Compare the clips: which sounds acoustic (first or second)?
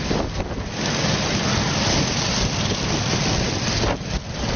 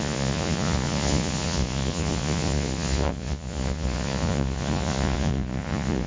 first